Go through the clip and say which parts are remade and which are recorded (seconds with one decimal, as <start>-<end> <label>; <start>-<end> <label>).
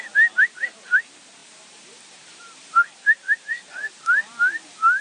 0.0-1.4 recorded; 1.4-4.4 remade; 4.4-5.0 recorded